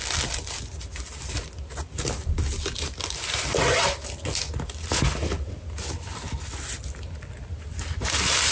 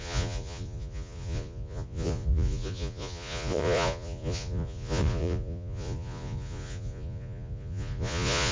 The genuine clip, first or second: first